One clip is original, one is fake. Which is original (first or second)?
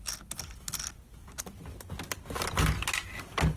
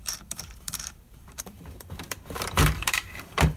first